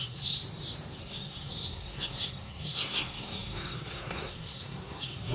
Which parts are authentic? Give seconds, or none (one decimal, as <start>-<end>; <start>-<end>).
0.4-1.0